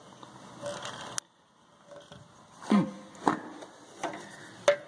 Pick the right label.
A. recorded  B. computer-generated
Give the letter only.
A